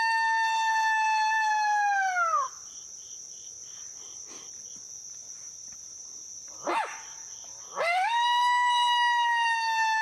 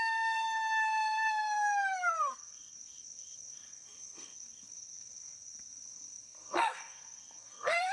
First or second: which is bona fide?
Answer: first